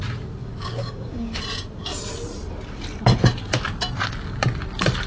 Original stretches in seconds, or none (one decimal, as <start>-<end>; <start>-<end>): 0.0-0.4; 1.4-5.1